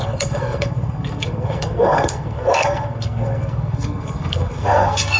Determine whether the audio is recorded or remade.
remade